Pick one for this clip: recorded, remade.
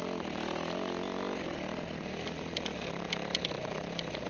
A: recorded